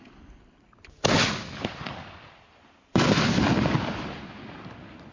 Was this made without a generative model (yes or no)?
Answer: yes